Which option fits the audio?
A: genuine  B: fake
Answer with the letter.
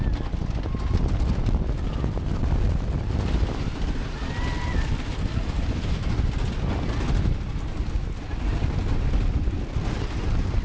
A